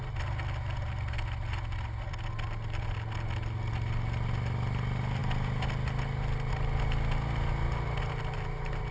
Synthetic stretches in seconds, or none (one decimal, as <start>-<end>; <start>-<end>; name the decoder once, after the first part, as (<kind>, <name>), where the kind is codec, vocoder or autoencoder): none